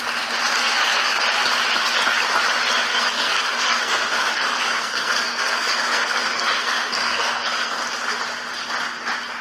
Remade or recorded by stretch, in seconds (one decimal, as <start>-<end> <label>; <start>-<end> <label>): 0.0-0.6 recorded; 0.6-1.2 remade; 1.2-2.9 recorded; 2.9-7.8 remade; 7.8-9.4 recorded